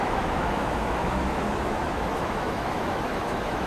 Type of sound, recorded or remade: remade